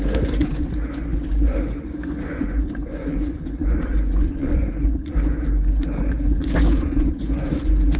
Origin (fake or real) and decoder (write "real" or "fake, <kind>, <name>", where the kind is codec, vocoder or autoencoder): fake, vocoder, Vocos